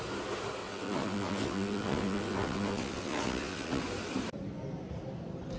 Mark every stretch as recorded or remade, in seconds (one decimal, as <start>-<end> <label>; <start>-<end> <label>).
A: 0.0-0.6 recorded; 0.6-3.8 remade; 3.8-5.6 recorded